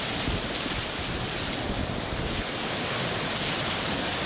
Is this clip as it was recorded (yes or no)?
yes